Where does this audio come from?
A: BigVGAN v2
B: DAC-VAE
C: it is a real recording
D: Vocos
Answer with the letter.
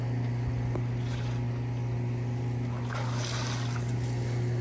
C